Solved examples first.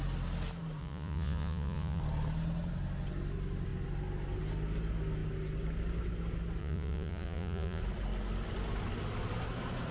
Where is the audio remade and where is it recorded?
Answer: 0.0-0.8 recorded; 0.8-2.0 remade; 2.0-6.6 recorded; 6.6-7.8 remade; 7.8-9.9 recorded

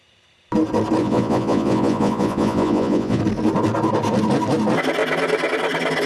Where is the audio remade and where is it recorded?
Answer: 0.0-1.0 recorded; 1.0-3.2 remade; 3.2-6.1 recorded

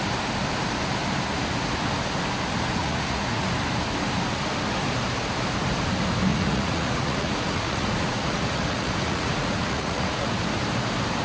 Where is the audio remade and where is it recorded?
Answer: 0.0-2.8 recorded; 2.8-3.5 remade; 3.5-6.3 recorded; 6.3-10.3 remade; 10.3-11.2 recorded

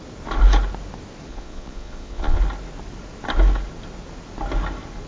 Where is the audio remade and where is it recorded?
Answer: 0.0-1.3 recorded; 1.3-2.4 remade; 2.4-5.1 recorded

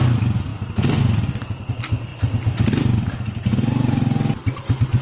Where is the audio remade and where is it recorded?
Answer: 0.0-5.0 recorded